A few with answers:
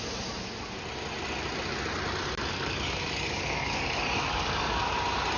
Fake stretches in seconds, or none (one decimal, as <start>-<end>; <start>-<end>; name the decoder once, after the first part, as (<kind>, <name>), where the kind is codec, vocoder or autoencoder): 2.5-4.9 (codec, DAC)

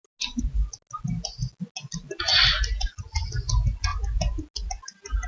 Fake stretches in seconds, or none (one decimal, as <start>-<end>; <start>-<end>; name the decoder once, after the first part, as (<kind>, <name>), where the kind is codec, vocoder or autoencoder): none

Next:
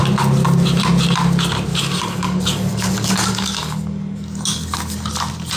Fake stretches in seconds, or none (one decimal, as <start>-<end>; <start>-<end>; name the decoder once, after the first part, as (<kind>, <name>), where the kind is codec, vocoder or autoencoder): 1.7-5.1 (codec, DAC)

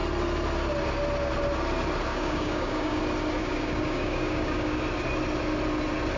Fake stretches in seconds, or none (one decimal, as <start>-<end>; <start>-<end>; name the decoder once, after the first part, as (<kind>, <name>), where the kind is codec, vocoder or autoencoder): 2.1-3.0 (codec, DAC); 3.4-4.8